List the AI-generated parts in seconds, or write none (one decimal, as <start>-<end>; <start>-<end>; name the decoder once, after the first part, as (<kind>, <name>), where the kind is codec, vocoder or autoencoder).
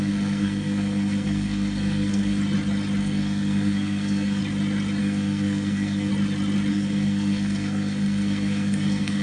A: 0.0-2.4 (codec, SNAC); 3.0-4.4; 5.0-6.1; 6.7-9.2